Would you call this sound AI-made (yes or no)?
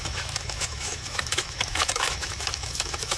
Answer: yes